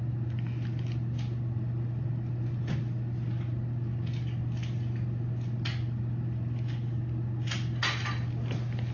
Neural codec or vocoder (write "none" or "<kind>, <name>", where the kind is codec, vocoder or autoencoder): none